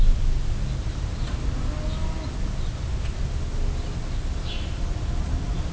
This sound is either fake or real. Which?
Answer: real